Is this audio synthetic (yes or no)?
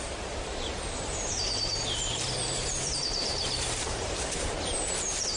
yes